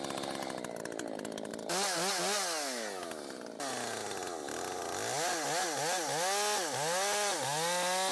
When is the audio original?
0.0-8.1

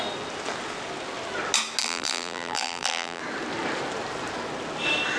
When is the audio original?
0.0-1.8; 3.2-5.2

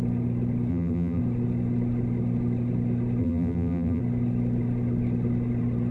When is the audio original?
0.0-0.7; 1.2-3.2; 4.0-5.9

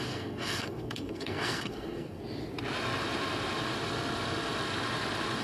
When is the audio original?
2.2-5.4

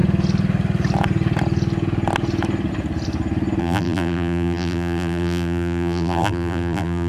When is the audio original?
0.0-3.6

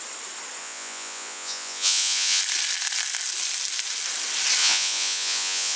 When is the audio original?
0.0-0.6; 2.4-4.6